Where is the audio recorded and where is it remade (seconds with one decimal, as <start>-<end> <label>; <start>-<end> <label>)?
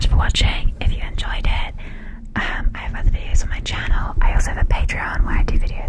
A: 0.0-0.6 recorded; 0.6-1.6 remade; 1.6-5.9 recorded